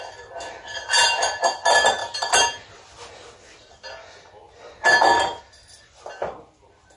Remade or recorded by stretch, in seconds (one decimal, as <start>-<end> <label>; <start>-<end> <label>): 0.0-7.0 recorded